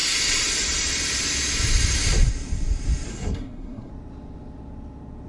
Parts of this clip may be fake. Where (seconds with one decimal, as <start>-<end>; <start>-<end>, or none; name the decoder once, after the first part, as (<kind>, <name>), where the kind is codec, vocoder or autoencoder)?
3.1-3.9 (codec, SNAC)

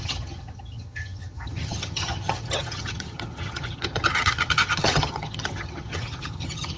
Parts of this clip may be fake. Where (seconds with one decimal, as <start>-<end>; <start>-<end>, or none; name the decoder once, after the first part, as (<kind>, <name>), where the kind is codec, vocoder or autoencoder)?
0.0-6.8 (vocoder, HiFi-GAN)

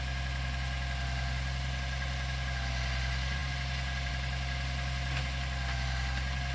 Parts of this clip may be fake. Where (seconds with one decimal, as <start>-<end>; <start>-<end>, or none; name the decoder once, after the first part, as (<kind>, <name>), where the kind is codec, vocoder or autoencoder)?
none

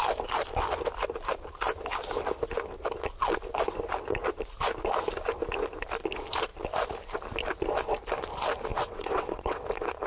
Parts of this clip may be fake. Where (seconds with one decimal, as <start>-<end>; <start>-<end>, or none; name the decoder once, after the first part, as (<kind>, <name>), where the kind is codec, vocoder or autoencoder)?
8.7-9.6 (vocoder, WaveNeXt)

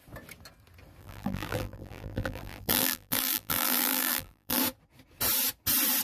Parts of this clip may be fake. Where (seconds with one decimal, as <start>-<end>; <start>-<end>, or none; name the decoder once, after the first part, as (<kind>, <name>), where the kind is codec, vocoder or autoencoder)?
1.0-4.6 (vocoder, BigVGAN v2)

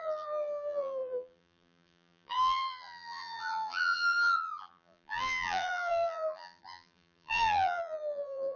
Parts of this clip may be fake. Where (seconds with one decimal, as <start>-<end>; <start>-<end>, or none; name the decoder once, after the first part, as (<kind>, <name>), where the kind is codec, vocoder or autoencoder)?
0.0-8.6 (vocoder, BigVGAN v2)

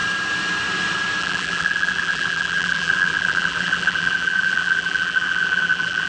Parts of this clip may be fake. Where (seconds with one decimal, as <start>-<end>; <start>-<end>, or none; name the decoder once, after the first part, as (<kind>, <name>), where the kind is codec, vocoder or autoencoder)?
1.2-6.1 (vocoder, BigVGAN v2)

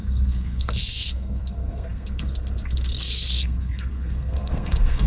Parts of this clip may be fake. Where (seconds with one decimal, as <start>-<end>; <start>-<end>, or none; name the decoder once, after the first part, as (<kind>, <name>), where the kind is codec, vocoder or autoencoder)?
0.0-5.1 (codec, SNAC)